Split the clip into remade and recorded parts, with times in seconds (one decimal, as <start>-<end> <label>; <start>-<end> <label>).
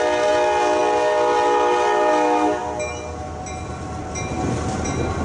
0.0-5.2 recorded